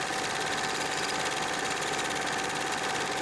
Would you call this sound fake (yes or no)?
no